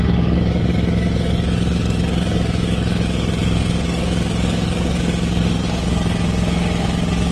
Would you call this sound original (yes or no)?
no